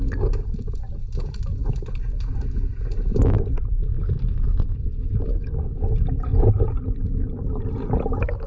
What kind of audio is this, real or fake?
real